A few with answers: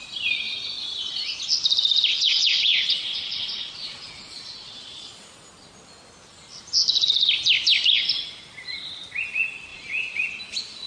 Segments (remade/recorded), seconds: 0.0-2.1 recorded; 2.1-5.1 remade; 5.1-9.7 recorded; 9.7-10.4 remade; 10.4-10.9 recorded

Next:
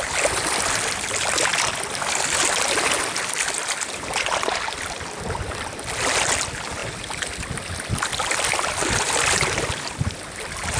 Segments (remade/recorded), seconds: 0.0-10.8 recorded

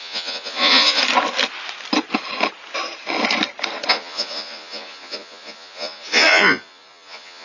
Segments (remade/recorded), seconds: 0.0-1.0 remade; 1.0-3.9 recorded; 3.9-7.4 remade

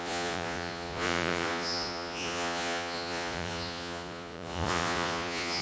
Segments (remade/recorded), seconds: 0.0-5.6 remade

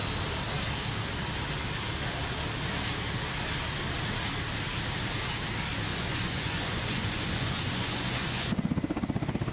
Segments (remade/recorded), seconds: 0.0-5.9 recorded; 5.9-8.5 remade; 8.5-9.5 recorded

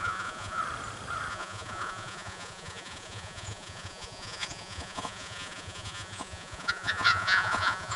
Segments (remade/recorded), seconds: 0.0-0.6 remade; 0.6-1.3 recorded; 1.3-8.0 remade